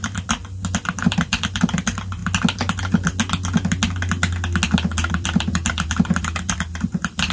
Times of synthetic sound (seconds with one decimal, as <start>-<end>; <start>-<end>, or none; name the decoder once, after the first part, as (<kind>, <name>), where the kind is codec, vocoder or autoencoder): 0.0-0.4 (vocoder, BigVGAN v2); 1.0-2.2; 5.1-7.3